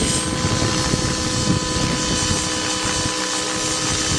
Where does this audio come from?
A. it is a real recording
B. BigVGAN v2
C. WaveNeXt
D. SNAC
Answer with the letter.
A